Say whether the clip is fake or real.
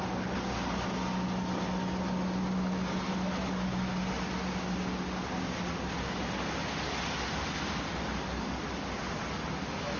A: real